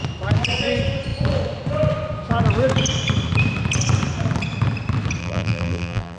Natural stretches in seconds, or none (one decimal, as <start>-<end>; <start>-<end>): 0.0-5.2

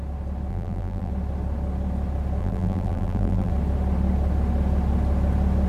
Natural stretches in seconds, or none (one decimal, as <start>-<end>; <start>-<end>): 0.0-0.5; 1.1-2.4; 3.5-5.7

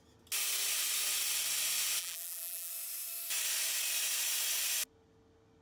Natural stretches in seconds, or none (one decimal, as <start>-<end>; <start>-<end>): 0.0-2.0; 2.7-5.6

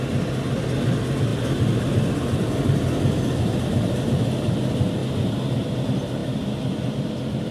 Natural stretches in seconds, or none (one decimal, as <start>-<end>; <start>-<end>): 0.0-7.5

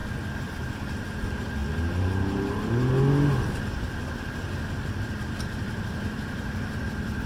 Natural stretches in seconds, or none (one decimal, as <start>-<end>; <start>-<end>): 0.0-0.5; 1.6-5.3